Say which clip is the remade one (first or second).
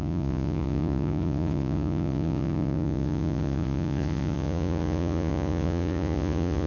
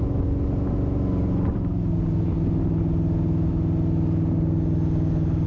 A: first